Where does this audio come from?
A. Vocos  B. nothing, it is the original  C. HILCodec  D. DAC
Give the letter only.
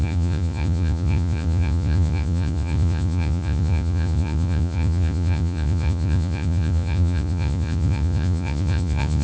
A